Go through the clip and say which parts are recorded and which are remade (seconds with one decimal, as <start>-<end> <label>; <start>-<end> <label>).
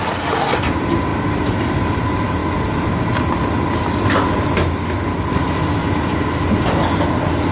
0.0-1.1 recorded; 1.1-2.0 remade; 2.0-5.8 recorded; 5.8-6.8 remade; 6.8-7.5 recorded